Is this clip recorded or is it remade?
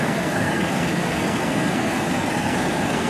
remade